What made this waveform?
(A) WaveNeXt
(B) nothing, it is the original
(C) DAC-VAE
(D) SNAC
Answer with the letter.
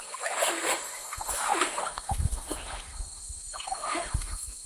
C